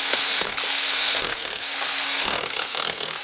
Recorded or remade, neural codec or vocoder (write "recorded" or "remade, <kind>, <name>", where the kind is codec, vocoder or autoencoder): remade, codec, SNAC